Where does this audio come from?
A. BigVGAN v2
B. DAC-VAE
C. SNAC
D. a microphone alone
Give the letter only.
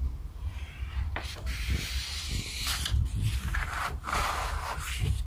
A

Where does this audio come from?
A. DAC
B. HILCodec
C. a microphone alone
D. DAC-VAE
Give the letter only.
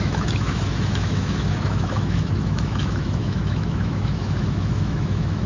D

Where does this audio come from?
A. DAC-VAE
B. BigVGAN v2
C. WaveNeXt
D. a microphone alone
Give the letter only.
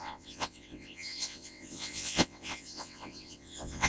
C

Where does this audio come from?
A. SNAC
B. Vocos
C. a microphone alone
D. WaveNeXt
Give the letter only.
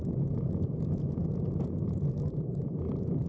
B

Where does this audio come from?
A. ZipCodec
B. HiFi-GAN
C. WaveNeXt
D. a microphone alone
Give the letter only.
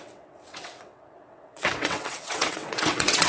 C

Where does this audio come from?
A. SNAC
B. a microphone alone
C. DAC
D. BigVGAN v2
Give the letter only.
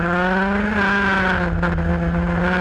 B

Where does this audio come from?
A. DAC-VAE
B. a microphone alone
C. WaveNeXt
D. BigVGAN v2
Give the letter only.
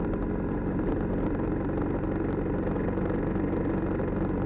B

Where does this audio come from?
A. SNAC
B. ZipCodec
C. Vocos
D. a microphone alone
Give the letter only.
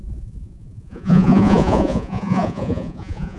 C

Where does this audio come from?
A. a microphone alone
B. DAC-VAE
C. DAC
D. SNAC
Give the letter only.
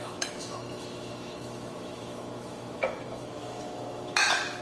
B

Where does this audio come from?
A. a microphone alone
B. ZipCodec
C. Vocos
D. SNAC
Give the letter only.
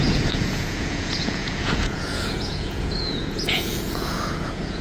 C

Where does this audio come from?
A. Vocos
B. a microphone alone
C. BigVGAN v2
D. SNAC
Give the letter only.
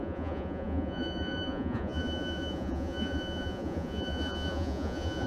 A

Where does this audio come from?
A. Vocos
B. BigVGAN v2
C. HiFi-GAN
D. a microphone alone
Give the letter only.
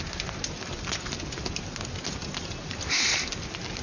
D